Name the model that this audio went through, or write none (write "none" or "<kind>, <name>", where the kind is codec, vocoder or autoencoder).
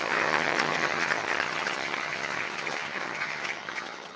vocoder, HiFi-GAN